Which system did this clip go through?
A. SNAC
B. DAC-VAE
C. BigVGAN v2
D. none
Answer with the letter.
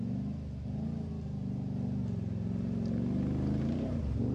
D